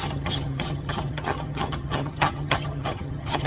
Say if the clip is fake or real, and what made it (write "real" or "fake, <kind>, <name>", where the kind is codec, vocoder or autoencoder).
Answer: fake, vocoder, HiFi-GAN